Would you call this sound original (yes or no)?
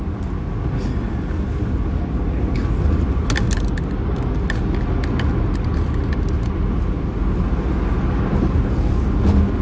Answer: yes